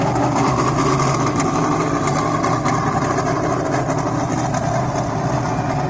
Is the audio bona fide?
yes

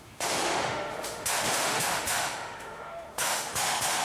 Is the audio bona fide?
no